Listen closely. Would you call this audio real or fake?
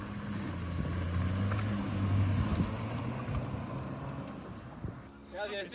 real